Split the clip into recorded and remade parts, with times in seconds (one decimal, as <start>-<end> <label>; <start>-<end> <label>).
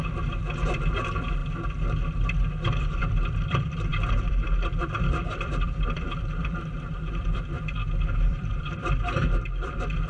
0.0-1.4 remade; 1.4-2.5 recorded; 2.5-10.1 remade